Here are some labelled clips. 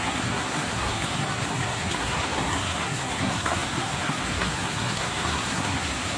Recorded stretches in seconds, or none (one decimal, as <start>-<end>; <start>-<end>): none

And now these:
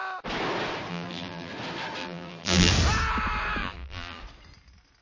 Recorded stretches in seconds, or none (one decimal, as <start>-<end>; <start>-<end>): 0.0-0.9; 1.5-2.0; 2.7-3.6; 4.2-5.0

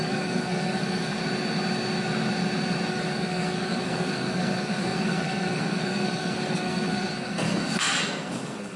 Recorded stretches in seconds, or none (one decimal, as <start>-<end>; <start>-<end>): 1.2-2.9

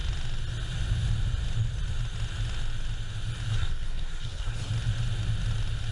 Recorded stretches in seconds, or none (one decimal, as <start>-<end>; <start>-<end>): 0.0-3.5; 4.7-5.9

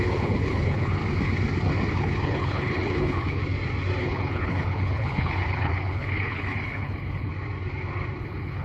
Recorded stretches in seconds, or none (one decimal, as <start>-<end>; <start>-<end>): 1.0-1.9; 3.4-4.0; 7.3-8.2

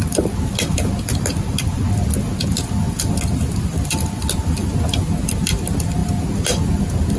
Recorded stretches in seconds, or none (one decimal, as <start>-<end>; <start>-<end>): 0.0-7.2

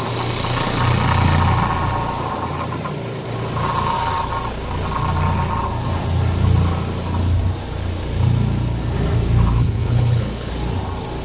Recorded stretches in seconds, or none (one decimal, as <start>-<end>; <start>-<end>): 0.0-9.6; 10.5-11.2

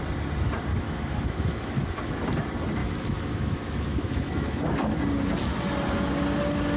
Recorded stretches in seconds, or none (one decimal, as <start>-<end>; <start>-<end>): 0.0-0.7; 2.1-2.8; 5.0-6.8